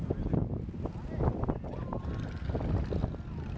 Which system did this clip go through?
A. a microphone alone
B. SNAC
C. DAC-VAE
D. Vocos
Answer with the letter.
A